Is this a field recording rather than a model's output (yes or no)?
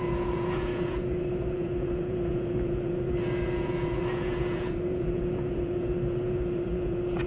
no